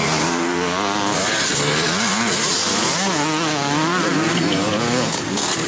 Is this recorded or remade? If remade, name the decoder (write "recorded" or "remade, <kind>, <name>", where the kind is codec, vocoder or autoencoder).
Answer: recorded